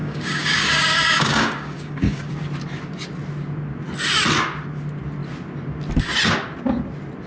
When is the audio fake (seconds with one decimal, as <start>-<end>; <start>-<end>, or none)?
0.0-2.3